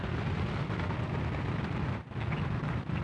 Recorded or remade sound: recorded